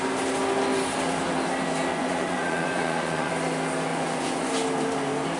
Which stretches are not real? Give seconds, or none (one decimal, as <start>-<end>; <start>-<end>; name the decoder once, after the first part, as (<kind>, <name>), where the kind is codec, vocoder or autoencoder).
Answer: 1.9-3.3 (vocoder, Vocos); 3.9-4.5